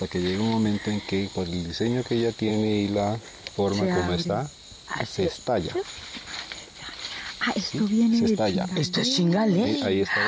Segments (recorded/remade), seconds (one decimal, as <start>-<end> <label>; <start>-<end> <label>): 0.0-10.3 recorded